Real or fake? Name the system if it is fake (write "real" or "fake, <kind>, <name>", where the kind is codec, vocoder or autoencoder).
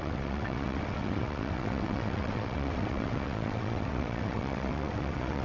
fake, vocoder, WaveNeXt